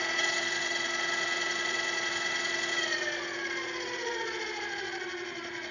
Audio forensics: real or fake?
fake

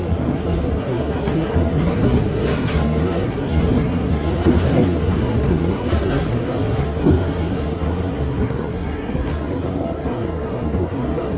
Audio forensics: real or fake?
fake